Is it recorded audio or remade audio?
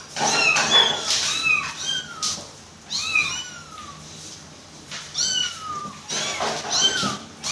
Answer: recorded